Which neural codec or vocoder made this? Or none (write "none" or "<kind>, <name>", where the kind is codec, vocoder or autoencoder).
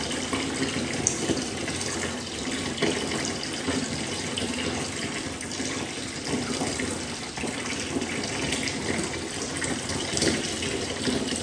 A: none